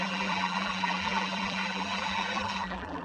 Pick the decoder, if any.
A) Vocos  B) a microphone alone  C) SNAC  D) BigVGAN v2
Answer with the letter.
D